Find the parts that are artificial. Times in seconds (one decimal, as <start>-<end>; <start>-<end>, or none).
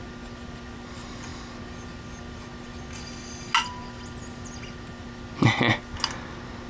none